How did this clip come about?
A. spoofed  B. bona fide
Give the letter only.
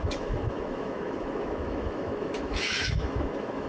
A